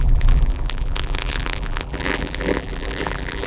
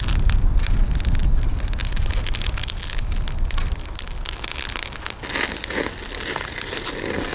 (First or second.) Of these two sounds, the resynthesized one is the first